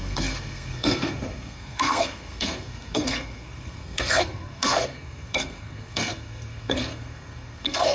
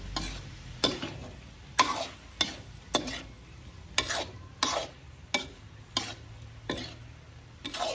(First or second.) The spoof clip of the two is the first